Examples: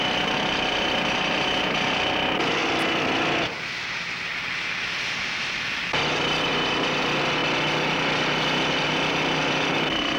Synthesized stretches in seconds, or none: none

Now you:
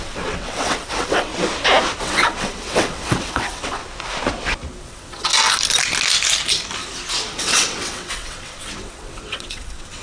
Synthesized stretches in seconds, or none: 0.0-1.3 (vocoder, WaveNeXt); 2.0-3.8; 4.8-5.3; 7.3-10.0

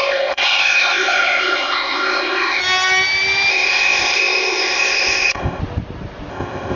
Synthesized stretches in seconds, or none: 0.0-2.6 (codec, ZipCodec); 3.5-5.6; 6.3-6.8

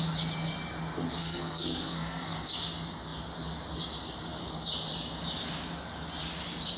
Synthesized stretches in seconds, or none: 1.2-2.5 (codec, SNAC)

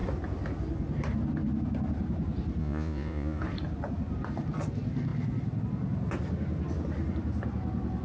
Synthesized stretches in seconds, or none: 2.6-3.4 (vocoder, Vocos)

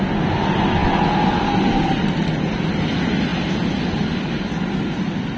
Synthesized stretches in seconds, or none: none

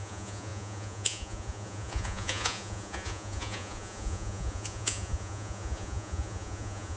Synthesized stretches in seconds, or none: 0.0-7.0 (vocoder, Vocos)